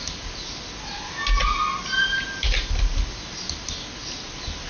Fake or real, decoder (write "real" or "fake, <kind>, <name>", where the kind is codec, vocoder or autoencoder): real